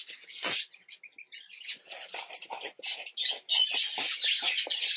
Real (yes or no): yes